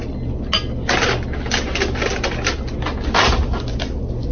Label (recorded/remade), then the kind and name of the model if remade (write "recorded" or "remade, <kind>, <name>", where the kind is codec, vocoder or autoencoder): recorded